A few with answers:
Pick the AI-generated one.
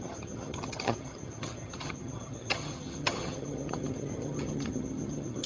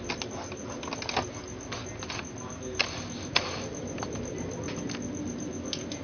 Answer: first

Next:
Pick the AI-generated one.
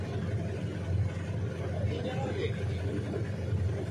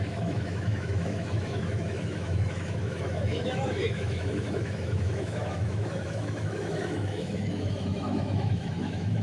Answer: second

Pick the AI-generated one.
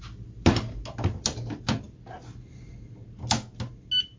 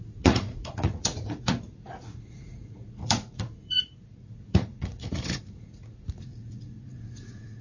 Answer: second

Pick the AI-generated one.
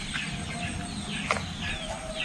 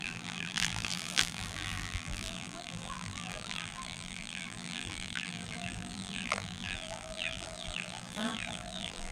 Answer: second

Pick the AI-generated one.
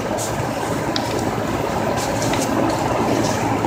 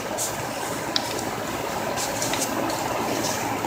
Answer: first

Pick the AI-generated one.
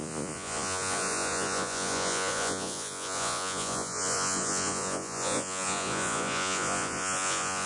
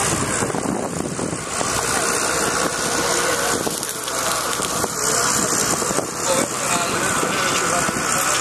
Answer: first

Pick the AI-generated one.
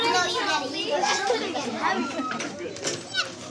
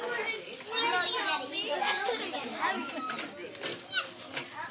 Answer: first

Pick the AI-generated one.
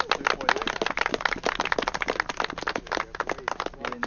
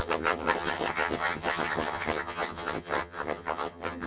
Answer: second